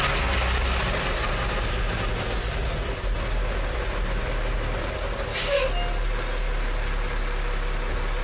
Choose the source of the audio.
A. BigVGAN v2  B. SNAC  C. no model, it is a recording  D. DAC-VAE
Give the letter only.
C